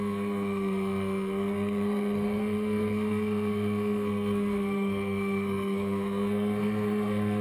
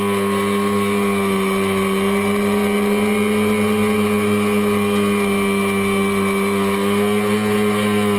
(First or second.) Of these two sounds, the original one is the second